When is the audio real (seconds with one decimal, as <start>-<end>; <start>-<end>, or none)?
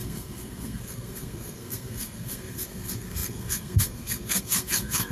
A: none